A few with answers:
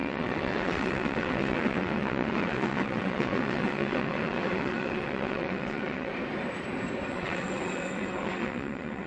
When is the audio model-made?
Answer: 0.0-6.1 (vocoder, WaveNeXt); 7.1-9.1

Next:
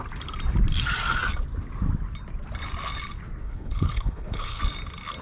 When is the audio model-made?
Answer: 3.4-4.6 (codec, HILCodec)